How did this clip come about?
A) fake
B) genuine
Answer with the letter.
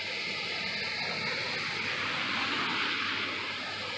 B